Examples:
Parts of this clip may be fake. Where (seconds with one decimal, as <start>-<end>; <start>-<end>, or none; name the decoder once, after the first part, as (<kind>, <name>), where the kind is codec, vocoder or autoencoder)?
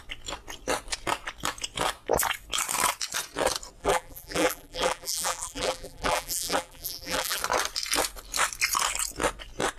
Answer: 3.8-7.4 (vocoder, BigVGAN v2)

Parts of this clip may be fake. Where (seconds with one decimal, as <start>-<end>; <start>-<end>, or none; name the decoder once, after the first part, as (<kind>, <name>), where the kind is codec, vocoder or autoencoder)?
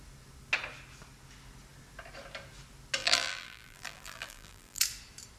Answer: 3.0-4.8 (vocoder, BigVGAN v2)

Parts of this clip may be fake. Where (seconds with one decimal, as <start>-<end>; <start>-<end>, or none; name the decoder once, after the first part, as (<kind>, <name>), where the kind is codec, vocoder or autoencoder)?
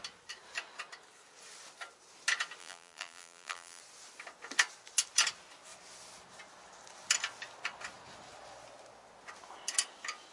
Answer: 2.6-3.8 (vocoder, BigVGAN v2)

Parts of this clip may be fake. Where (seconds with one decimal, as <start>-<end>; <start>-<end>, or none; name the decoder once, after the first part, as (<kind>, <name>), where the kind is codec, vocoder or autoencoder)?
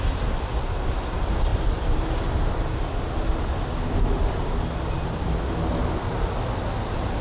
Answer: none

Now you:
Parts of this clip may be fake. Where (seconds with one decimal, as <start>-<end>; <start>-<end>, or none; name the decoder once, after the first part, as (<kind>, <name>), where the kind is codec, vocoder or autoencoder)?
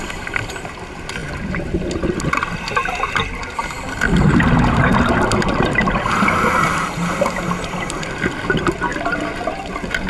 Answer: 8.9-9.5 (vocoder, BigVGAN v2)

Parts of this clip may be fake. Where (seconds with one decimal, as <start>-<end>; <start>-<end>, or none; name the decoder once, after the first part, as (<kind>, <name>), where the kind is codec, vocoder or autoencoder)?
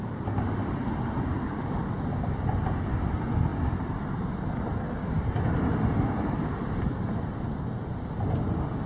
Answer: 0.8-1.6 (vocoder, BigVGAN v2); 5.7-8.2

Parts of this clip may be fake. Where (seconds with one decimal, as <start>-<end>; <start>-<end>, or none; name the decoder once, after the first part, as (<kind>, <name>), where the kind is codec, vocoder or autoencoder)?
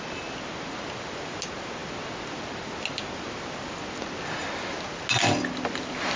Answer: none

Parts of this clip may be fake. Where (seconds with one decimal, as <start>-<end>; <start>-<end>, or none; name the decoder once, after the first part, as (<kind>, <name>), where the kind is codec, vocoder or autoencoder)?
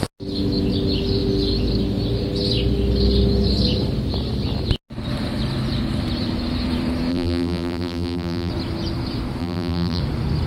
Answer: 7.1-8.5 (vocoder, BigVGAN v2); 9.4-10.0